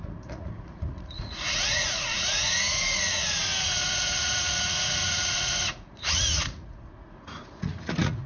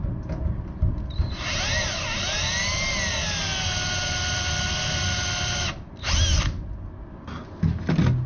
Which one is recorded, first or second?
second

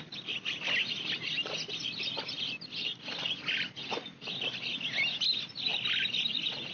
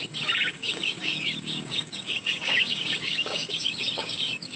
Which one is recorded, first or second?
first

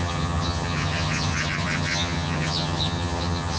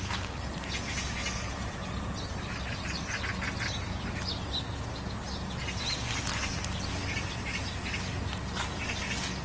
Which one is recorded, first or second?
second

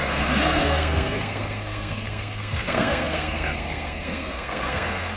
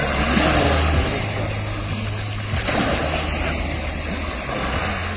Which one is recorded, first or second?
second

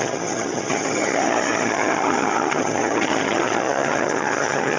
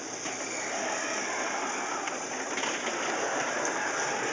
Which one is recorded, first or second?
second